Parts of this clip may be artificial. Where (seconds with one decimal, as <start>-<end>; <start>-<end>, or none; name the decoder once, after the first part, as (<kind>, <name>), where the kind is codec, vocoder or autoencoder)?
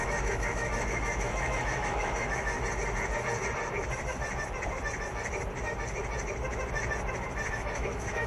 0.0-2.5 (autoencoder, DAC-VAE); 7.5-8.3